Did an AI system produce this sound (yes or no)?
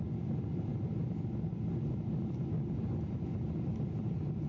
no